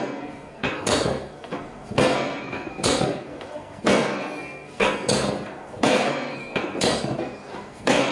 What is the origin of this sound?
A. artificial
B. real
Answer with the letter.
A